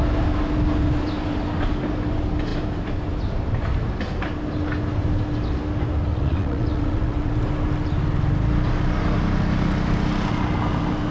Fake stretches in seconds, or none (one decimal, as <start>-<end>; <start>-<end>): 6.1-7.3